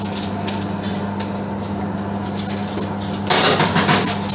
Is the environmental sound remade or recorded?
recorded